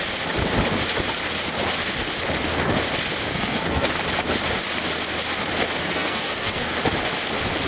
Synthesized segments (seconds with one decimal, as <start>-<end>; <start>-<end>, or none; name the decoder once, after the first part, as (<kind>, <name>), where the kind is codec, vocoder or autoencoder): 3.3-3.9 (codec, SNAC); 5.8-6.7